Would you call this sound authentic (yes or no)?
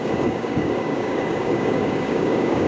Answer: no